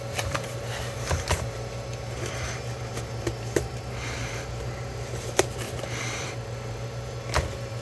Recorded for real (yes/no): no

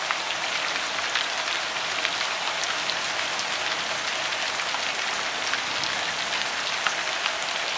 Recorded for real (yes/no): yes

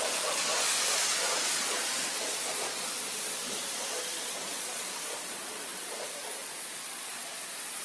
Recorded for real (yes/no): no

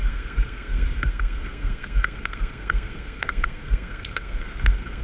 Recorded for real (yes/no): no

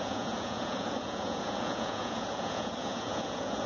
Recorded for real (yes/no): no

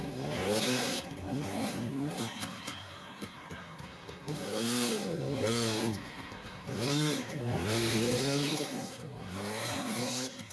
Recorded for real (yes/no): no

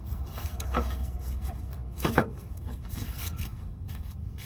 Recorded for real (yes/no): no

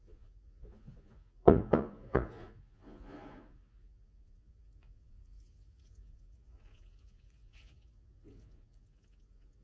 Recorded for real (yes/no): no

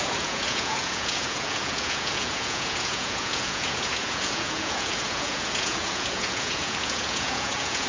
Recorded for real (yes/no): no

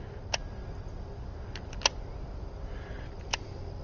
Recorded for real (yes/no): yes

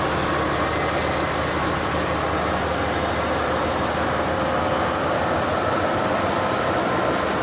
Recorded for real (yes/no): yes